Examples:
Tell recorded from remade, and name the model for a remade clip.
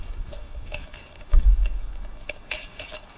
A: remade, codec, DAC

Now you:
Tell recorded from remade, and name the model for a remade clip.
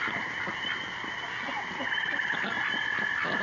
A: recorded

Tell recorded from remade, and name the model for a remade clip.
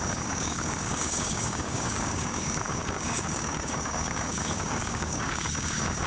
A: remade, codec, DAC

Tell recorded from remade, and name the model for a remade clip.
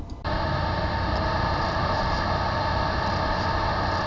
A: recorded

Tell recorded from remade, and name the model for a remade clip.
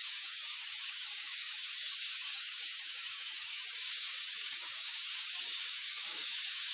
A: remade, codec, DAC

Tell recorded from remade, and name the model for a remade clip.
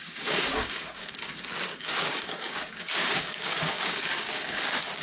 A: remade, codec, DAC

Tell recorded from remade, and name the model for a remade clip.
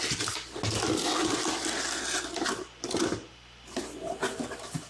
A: recorded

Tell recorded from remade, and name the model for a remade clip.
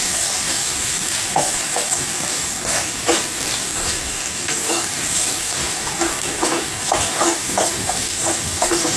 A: remade, codec, DAC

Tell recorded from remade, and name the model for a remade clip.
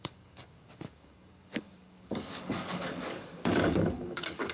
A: remade, codec, DAC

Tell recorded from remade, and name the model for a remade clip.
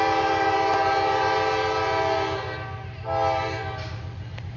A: recorded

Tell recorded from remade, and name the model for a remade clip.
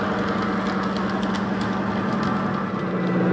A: recorded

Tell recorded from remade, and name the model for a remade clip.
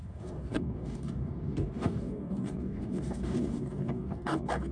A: remade, codec, DAC